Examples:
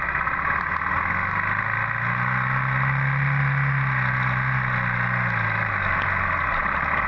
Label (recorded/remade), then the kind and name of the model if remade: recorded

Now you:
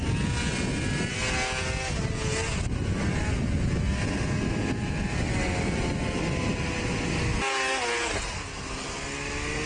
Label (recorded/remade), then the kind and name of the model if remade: recorded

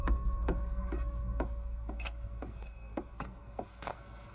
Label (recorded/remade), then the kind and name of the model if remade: remade, codec, SNAC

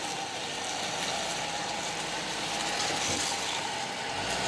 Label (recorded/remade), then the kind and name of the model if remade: recorded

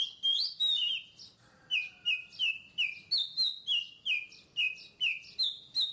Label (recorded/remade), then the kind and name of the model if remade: recorded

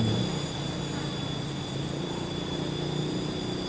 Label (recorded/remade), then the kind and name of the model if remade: recorded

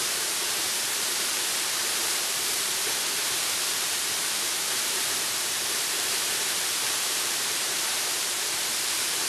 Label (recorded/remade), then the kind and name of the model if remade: remade, vocoder, BigVGAN v2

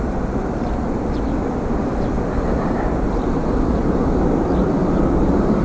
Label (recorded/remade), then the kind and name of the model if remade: remade, vocoder, BigVGAN v2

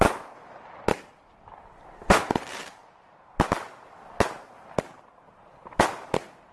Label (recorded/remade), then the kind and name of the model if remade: recorded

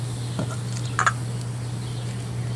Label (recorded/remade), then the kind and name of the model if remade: recorded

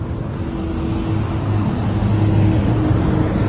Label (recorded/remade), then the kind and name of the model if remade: recorded